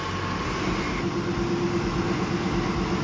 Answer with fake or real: real